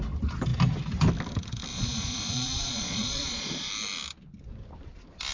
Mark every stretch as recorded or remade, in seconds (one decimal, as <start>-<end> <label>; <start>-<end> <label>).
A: 0.0-1.7 recorded; 1.7-3.7 remade; 3.7-5.3 recorded

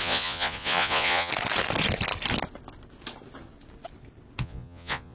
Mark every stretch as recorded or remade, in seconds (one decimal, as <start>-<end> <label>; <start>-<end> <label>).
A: 0.0-1.3 remade; 1.3-4.4 recorded; 4.4-5.1 remade

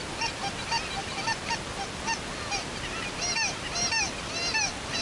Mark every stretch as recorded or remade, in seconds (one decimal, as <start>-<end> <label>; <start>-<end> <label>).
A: 0.0-5.0 recorded

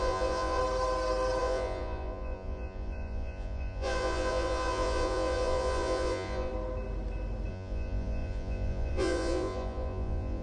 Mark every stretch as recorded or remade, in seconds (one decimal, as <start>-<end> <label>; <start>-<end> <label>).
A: 0.0-0.6 remade; 0.6-1.4 recorded; 1.4-6.5 remade; 6.5-7.5 recorded; 7.5-10.4 remade

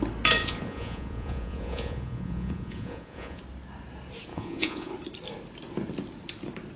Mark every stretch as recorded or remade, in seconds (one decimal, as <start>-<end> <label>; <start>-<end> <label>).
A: 0.0-0.4 recorded; 0.4-3.4 remade; 3.4-4.3 recorded; 4.3-4.9 remade; 4.9-6.8 recorded

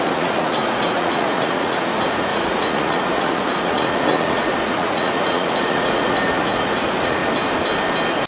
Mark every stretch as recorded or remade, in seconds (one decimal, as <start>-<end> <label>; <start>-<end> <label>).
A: 0.0-7.2 remade; 7.2-8.3 recorded

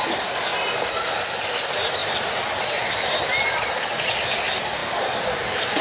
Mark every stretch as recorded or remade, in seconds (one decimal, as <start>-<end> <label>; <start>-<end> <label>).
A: 0.0-5.8 recorded

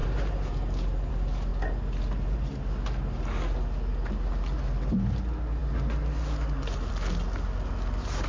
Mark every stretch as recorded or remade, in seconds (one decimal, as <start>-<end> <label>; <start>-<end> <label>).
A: 0.0-8.3 recorded